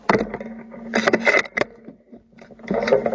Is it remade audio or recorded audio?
recorded